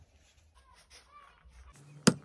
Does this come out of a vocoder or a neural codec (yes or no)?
no